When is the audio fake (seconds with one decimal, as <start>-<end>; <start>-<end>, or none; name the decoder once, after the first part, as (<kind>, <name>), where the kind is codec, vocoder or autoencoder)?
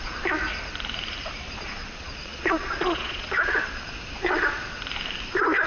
1.8-3.7 (vocoder, Vocos)